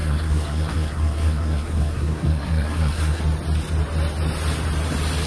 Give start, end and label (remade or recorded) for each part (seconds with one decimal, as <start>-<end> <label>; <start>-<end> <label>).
0.0-3.2 remade; 3.2-5.3 recorded